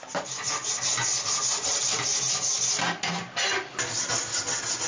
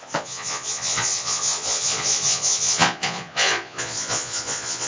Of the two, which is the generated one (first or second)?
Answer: second